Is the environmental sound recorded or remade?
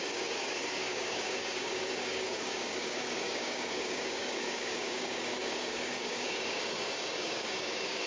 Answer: remade